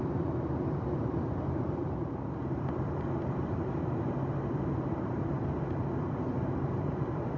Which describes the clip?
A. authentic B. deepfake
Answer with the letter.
B